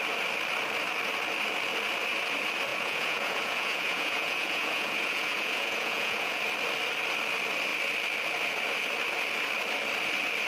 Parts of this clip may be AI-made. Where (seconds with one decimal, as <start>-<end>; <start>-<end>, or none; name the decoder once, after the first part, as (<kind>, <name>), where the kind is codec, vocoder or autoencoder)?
2.7-6.4 (vocoder, Vocos)